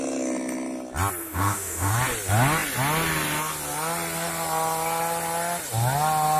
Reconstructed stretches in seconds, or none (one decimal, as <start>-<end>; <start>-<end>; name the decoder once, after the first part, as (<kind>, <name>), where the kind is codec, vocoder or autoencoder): 1.2-1.9 (autoencoder, DAC-VAE)